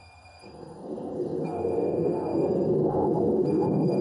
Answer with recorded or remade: remade